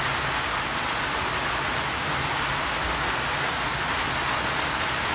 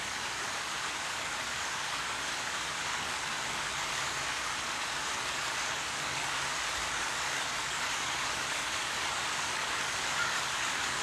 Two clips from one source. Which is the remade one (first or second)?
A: second